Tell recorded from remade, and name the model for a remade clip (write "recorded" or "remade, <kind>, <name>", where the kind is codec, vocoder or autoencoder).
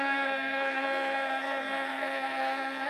remade, codec, SNAC